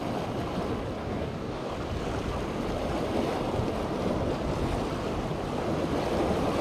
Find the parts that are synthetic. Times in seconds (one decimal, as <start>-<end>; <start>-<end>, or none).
1.0-1.7